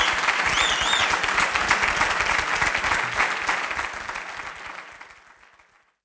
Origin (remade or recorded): recorded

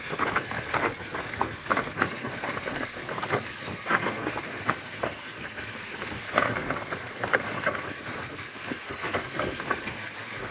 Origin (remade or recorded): remade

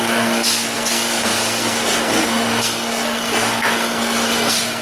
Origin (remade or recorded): remade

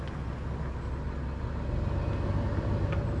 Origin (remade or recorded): recorded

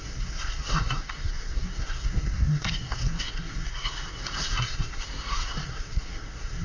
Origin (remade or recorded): remade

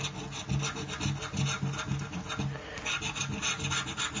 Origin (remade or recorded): recorded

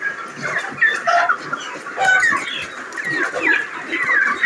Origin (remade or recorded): recorded